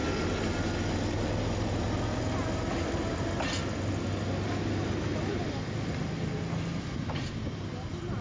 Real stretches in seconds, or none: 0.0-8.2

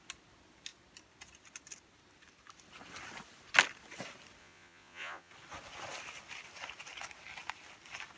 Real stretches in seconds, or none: 0.0-4.4; 5.3-8.2

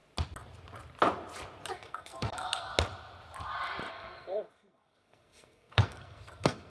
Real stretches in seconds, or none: 0.0-1.7; 2.7-3.9